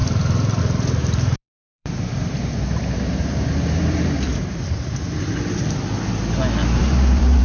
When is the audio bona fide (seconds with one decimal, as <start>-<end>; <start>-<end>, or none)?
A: 0.0-1.0; 4.6-6.8